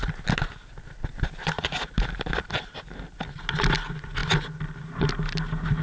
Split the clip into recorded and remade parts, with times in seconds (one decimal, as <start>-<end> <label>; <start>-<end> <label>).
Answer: 0.0-5.8 recorded